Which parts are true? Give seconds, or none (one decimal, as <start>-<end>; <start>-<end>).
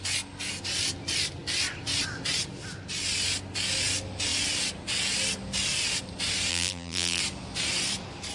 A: 0.0-6.5; 7.2-8.3